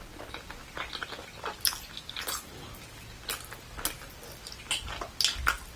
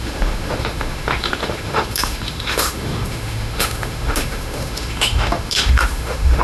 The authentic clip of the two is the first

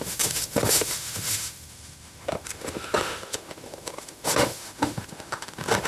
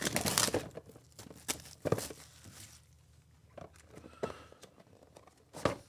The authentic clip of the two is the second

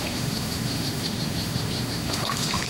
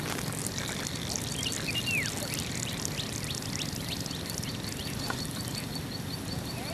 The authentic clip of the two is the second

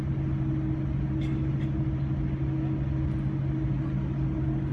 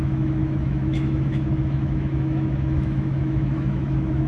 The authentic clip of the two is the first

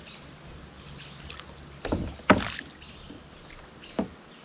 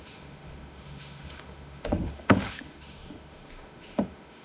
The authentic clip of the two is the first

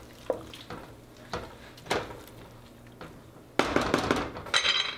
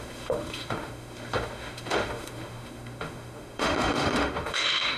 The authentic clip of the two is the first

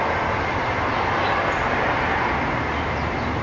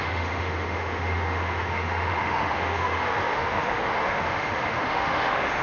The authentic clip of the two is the first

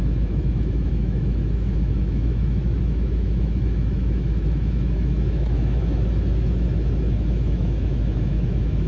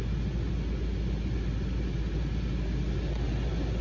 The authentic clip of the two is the second